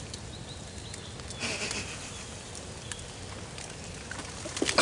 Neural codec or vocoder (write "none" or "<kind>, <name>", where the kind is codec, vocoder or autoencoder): none